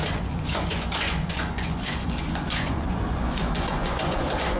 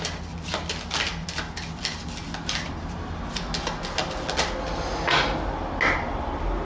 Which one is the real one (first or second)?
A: second